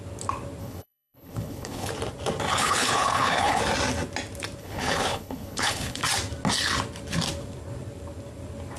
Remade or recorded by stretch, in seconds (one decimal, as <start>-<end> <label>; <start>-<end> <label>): 0.0-0.6 recorded; 0.6-1.9 remade; 1.9-2.5 recorded; 2.5-3.6 remade; 3.6-4.6 recorded; 4.6-6.0 remade; 6.0-8.8 recorded